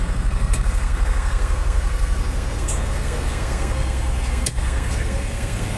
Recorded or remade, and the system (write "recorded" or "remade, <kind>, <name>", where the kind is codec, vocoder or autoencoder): remade, codec, SNAC